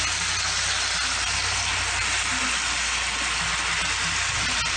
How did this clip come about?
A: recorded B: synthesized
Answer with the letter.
A